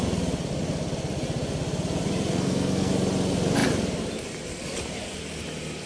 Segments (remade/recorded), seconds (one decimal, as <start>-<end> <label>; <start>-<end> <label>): 0.0-2.3 recorded; 2.3-2.9 remade; 2.9-5.9 recorded

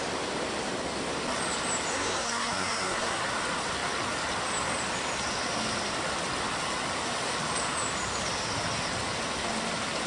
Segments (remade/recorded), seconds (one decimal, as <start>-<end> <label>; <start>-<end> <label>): 0.0-1.9 recorded; 1.9-3.2 remade; 3.2-10.1 recorded

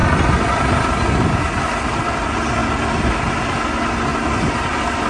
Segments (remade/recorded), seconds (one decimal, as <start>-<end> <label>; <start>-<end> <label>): 0.0-5.1 recorded

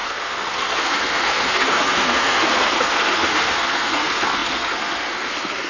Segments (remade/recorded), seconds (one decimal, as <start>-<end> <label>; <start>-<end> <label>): 0.0-5.7 remade

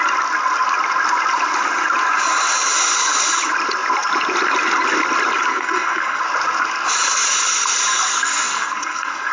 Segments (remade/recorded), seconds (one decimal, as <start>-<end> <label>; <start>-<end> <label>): 0.0-5.5 recorded; 5.5-6.2 remade; 6.2-8.1 recorded; 8.1-9.3 remade

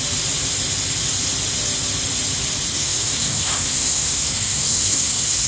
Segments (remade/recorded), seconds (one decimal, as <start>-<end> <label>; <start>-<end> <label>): 0.0-2.7 recorded; 2.7-5.5 remade